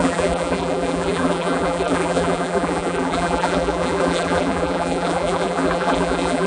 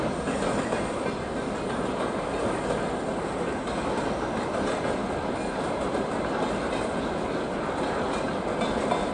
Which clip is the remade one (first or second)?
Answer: first